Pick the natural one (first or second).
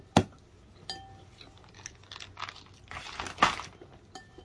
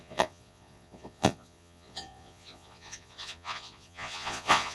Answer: first